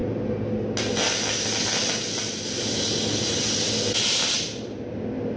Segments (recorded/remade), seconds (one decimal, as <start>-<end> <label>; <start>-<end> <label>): 0.0-5.4 recorded